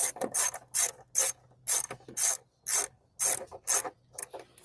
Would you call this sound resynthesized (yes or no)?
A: no